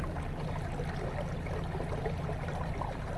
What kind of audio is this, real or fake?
real